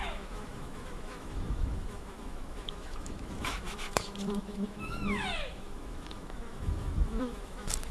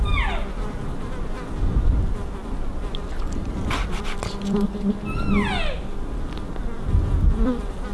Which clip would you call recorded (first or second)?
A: second